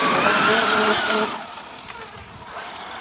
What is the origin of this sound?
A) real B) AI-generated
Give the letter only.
A